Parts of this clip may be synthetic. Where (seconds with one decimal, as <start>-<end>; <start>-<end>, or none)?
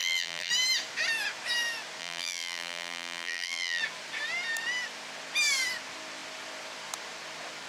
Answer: 0.0-0.5; 2.0-3.8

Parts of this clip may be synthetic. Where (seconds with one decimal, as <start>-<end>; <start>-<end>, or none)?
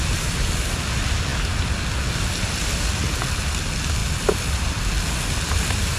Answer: 4.0-4.6